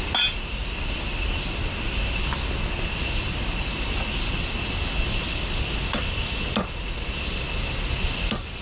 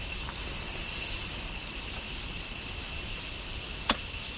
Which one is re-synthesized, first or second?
second